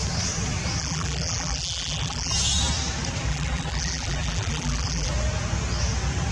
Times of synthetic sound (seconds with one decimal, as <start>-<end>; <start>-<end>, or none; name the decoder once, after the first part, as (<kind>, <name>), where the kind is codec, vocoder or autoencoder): 0.8-2.3 (vocoder, BigVGAN v2); 3.3-5.1